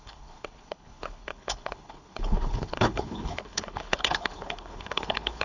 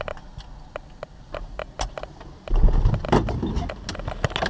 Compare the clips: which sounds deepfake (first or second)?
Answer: first